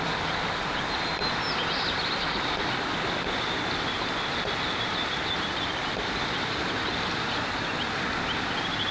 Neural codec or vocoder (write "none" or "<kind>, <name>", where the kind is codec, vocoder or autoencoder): none